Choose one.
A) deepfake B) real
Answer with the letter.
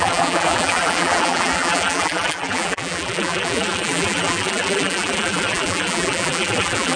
A